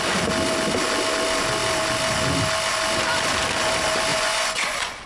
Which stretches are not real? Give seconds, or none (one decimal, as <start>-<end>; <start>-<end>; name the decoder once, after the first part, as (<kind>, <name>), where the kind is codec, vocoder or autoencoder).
4.1-5.1 (vocoder, Vocos)